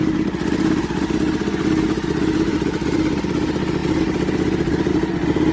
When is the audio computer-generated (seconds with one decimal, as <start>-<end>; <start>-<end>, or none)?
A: 2.5-3.2